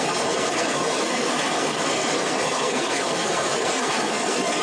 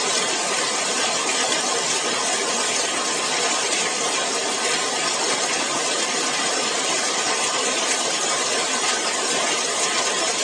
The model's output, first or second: first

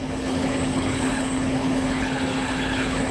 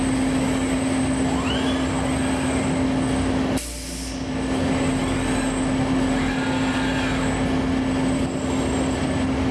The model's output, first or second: first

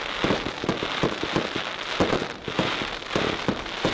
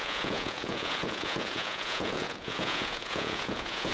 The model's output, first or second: second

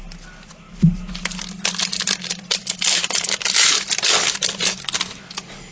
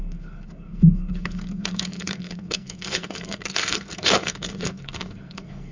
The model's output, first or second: second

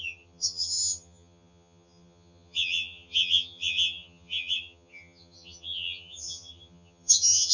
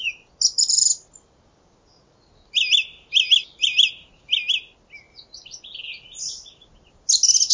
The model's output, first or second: first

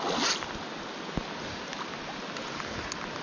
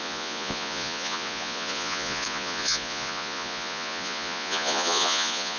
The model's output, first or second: second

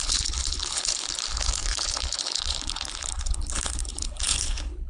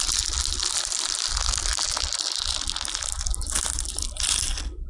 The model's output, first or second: first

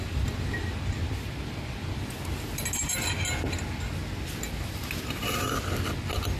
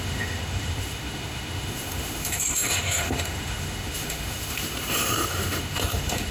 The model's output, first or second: second